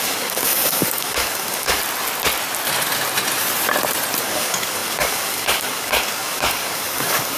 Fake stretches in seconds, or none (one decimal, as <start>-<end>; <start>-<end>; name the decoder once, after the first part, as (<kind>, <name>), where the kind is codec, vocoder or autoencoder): 0.0-1.8 (codec, DAC); 4.2-7.4